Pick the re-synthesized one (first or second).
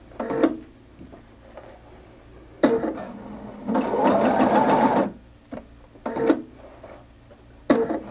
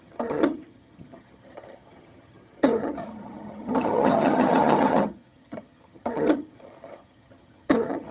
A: second